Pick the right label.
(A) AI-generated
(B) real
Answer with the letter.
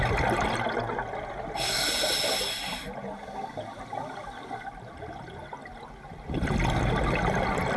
B